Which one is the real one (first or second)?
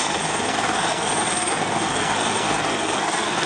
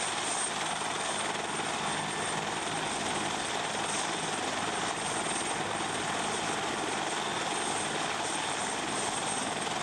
second